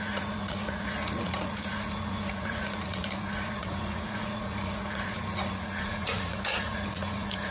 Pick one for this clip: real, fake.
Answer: fake